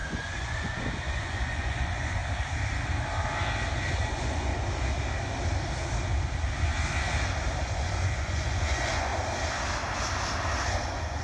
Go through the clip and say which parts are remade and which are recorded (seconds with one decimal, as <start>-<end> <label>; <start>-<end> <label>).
0.0-2.2 remade; 2.2-3.9 recorded; 3.9-4.6 remade; 4.6-7.6 recorded; 7.6-9.1 remade; 9.1-10.7 recorded; 10.7-11.2 remade